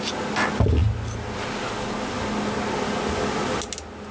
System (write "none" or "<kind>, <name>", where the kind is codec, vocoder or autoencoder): none